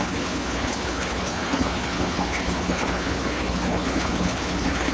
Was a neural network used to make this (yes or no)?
yes